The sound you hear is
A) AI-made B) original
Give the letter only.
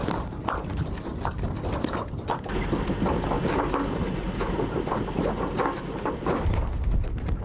B